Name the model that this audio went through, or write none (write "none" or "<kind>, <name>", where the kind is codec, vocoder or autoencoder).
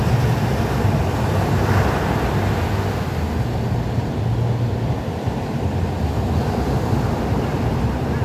none